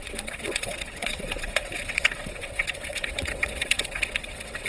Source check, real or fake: fake